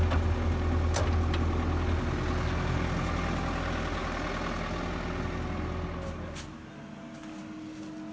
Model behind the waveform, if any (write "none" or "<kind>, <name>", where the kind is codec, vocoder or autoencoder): none